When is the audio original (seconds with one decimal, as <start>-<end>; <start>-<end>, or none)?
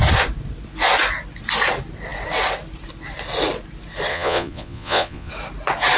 0.0-4.1; 5.3-6.0